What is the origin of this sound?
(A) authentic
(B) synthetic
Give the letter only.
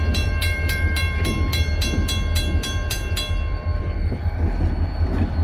B